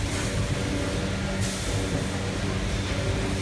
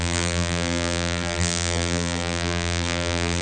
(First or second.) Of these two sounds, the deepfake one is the second